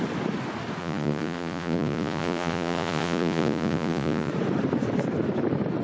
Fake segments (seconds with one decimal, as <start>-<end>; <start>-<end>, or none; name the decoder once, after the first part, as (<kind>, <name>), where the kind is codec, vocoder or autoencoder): 0.8-4.3 (vocoder, Vocos)